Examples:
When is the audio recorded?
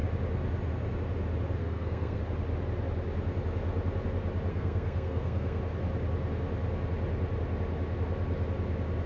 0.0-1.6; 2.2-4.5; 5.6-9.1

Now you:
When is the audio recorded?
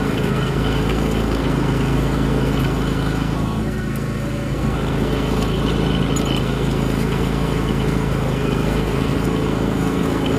5.6-6.4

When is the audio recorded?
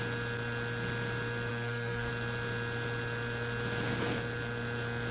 0.0-1.5; 2.1-5.1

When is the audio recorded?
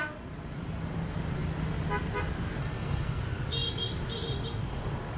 0.0-2.6; 3.2-5.2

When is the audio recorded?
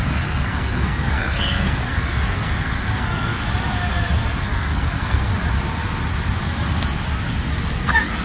3.4-4.4; 5.3-7.7